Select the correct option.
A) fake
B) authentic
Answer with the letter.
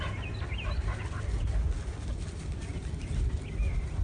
B